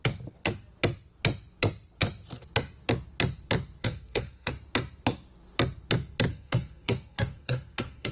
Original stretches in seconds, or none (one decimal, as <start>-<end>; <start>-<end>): 0.0-3.8; 4.5-6.3